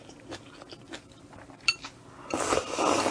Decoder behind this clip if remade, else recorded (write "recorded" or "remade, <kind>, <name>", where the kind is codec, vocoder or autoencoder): recorded